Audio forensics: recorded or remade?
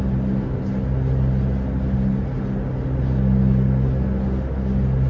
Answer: recorded